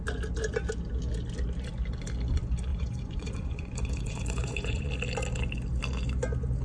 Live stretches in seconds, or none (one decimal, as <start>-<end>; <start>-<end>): 0.0-2.7; 4.9-6.6